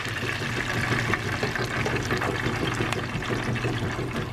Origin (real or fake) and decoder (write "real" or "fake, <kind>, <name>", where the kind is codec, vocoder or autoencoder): real